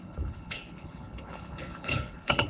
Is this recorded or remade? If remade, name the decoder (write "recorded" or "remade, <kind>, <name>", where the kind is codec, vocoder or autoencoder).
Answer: remade, codec, HILCodec